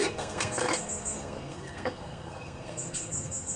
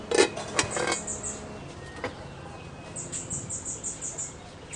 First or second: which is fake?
first